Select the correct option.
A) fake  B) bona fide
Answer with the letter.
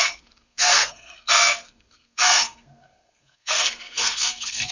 A